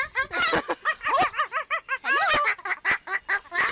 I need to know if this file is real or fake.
real